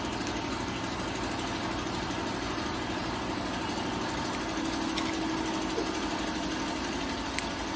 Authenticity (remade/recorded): recorded